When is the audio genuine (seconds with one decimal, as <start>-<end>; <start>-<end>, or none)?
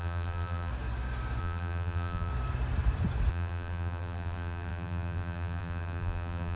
0.7-1.4; 2.3-3.3